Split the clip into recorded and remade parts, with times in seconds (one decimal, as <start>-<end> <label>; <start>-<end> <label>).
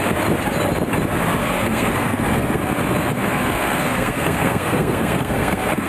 0.0-1.4 recorded; 1.4-2.6 remade; 2.6-3.0 recorded; 3.0-5.9 remade